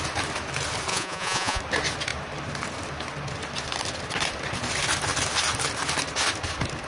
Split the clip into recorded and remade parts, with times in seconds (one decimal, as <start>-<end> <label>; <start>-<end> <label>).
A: 0.0-0.9 recorded; 0.9-1.6 remade; 1.6-6.9 recorded